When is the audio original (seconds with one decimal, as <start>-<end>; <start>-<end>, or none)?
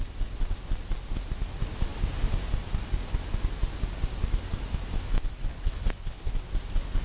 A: 0.0-5.5; 6.3-7.0